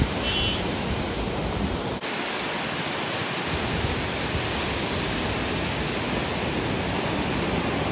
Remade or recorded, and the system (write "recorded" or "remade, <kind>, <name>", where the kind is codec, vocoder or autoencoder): recorded